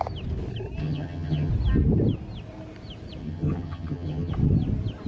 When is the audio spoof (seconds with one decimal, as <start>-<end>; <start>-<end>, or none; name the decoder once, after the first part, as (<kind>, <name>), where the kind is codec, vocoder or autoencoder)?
0.8-1.5 (vocoder, HiFi-GAN); 3.2-4.3